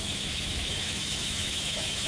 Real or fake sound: fake